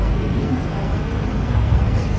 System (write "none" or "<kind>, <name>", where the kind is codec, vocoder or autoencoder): codec, SNAC